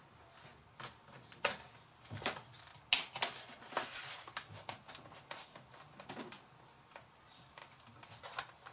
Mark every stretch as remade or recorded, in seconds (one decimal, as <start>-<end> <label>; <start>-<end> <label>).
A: 0.0-8.7 recorded